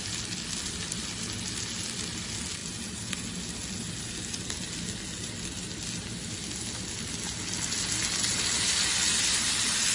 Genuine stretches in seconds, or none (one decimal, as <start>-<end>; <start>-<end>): 0.0-9.9